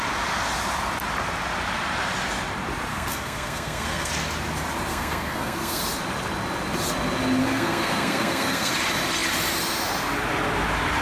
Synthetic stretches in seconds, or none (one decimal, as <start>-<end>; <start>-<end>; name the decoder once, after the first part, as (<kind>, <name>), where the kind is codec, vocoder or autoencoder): 2.9-4.1 (codec, SNAC); 4.9-5.8; 7.4-8.7